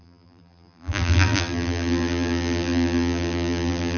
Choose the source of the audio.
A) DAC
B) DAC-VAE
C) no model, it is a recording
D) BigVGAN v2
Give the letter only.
D